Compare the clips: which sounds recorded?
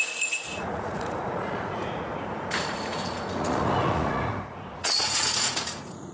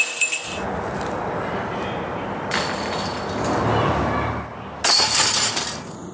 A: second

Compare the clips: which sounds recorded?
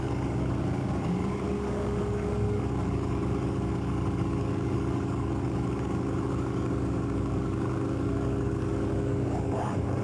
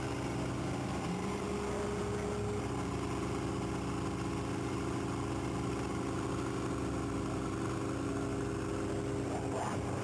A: second